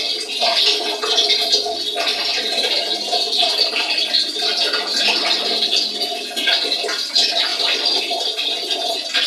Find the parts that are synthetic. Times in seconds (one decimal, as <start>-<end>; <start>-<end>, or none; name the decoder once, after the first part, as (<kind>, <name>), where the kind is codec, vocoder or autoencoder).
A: 4.9-7.1 (vocoder, BigVGAN v2); 7.5-8.0